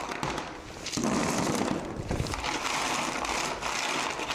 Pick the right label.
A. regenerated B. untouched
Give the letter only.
B